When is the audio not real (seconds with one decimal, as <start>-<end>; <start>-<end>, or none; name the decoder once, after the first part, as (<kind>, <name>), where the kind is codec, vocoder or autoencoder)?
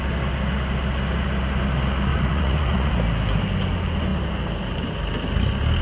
2.1-2.9 (vocoder, Vocos)